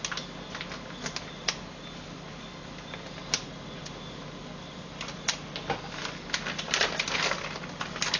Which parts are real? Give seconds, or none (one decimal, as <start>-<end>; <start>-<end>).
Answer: 0.0-8.2